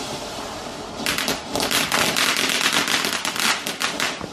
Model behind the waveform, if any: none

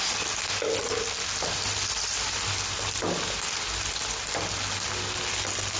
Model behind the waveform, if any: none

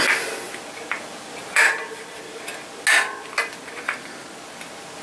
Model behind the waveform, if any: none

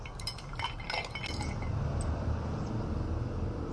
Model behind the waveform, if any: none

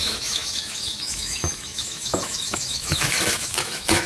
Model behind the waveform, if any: autoencoder, DAC-VAE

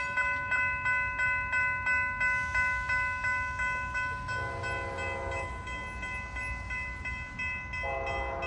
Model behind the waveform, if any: none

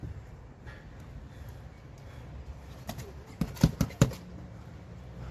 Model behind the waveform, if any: none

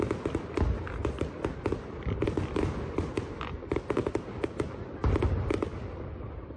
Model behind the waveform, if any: none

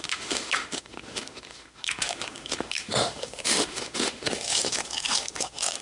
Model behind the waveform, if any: autoencoder, DAC-VAE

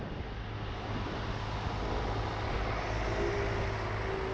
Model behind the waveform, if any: none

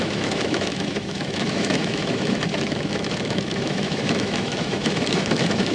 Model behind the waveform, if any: autoencoder, DAC-VAE